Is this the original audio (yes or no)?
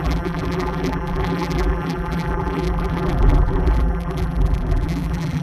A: no